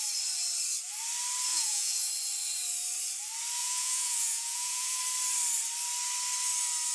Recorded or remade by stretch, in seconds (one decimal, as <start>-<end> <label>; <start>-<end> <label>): 0.0-1.5 recorded; 1.5-2.1 remade; 2.1-3.6 recorded; 3.6-5.0 remade; 5.0-6.9 recorded